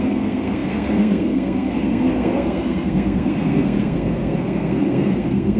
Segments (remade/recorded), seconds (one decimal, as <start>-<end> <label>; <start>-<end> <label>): 0.0-5.6 remade